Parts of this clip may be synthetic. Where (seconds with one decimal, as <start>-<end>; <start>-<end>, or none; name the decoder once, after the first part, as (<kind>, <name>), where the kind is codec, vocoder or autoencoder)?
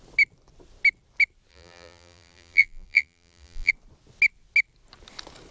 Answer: 1.5-3.7 (vocoder, BigVGAN v2)